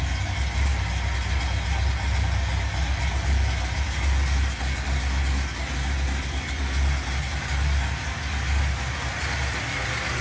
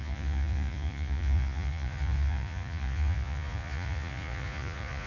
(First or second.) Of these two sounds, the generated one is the second